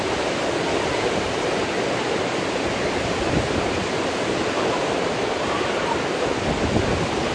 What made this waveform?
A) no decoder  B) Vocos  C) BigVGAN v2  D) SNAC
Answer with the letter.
A